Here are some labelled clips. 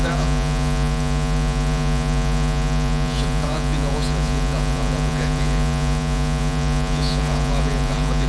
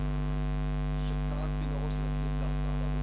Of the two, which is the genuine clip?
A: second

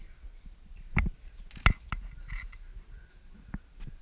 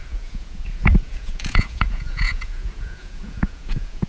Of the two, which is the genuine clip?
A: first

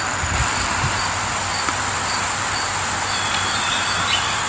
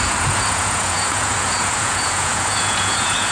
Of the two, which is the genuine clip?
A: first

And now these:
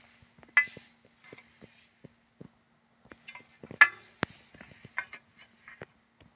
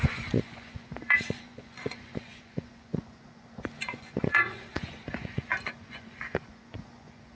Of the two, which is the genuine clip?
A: first